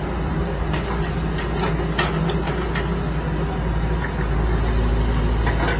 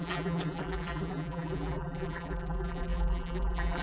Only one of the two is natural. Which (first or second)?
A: first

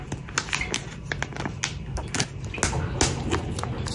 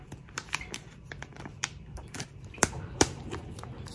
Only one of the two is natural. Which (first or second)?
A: first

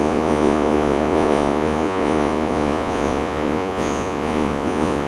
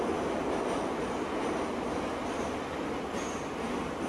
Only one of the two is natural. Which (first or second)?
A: second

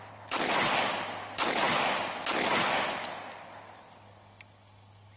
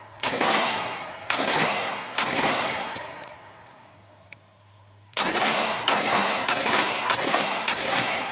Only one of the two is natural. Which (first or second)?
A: first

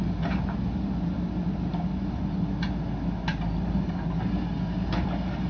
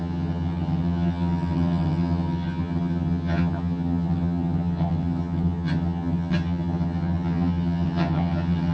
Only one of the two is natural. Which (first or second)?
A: first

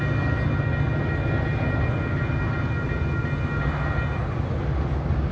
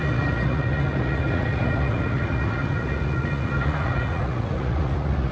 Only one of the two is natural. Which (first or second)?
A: first